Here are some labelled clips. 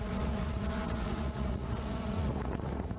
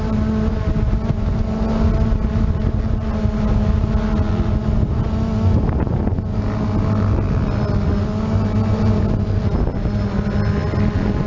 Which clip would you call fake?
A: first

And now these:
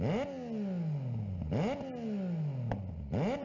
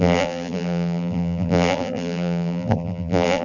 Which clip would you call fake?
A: second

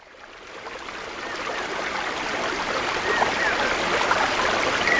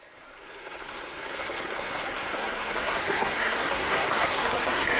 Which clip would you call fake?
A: second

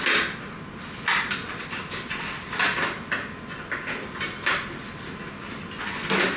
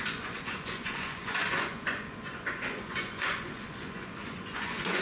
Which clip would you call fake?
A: second